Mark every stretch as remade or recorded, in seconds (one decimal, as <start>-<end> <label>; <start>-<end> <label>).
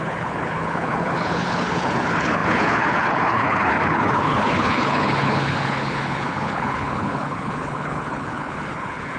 0.0-9.2 remade